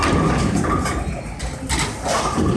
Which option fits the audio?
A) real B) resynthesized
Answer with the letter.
A